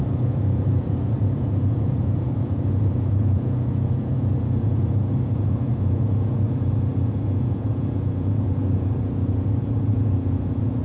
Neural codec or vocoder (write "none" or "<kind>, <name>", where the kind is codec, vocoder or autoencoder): vocoder, Vocos